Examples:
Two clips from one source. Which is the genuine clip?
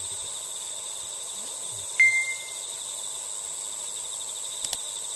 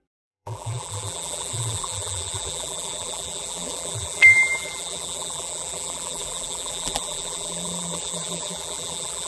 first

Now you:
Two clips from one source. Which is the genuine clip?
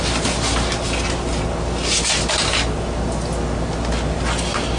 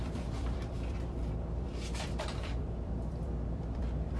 first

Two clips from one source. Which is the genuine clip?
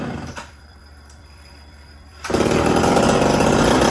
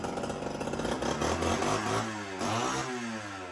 second